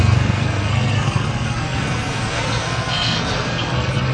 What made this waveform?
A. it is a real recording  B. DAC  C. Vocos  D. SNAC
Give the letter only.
D